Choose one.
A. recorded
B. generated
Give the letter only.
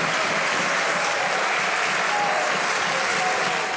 A